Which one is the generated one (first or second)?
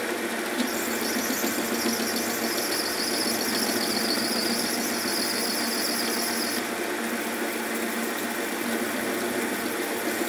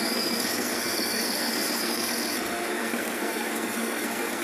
second